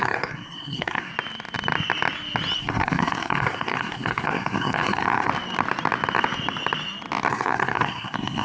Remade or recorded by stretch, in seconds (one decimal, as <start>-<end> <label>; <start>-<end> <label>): 0.0-1.1 remade; 1.1-2.6 recorded; 2.6-5.3 remade; 5.3-7.3 recorded; 7.3-8.4 remade